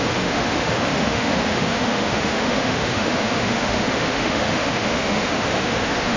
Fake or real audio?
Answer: fake